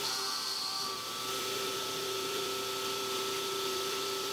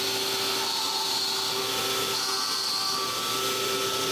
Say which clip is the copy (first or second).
first